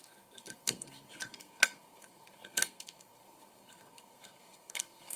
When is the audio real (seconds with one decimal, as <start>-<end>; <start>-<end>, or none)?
none